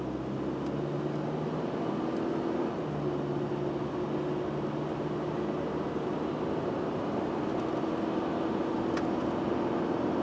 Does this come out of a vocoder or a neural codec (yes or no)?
no